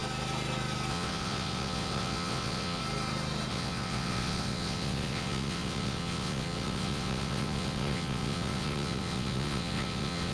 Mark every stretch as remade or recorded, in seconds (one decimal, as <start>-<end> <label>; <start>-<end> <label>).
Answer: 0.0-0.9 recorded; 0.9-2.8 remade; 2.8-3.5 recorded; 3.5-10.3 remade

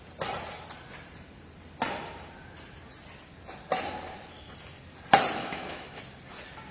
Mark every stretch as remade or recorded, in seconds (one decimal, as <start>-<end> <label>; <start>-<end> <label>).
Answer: 0.0-5.4 recorded; 5.4-6.0 remade; 6.0-6.7 recorded

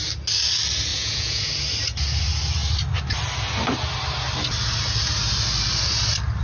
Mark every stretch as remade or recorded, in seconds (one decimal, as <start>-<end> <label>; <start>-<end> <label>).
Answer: 0.0-0.9 recorded; 0.9-1.5 remade; 1.5-6.4 recorded

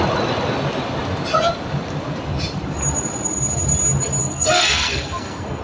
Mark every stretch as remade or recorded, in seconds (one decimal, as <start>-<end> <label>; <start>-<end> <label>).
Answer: 0.0-4.2 recorded; 4.2-5.6 remade

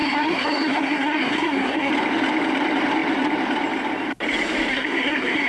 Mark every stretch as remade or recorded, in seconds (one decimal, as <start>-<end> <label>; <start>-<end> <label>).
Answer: 0.0-1.9 remade; 1.9-4.7 recorded; 4.7-5.5 remade

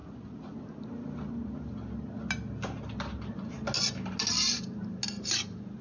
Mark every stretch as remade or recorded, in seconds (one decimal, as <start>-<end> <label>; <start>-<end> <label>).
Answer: 0.0-5.8 recorded